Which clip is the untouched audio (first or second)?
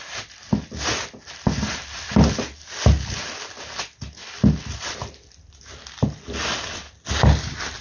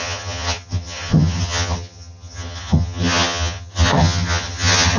first